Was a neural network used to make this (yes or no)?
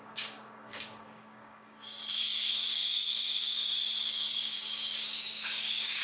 yes